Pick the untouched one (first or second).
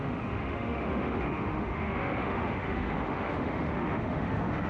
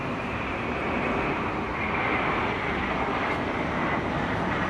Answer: second